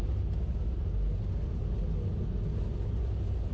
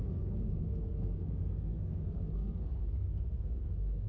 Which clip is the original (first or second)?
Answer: first